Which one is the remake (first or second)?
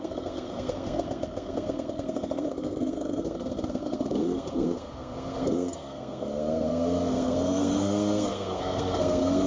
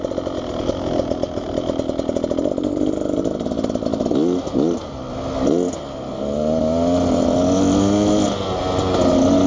first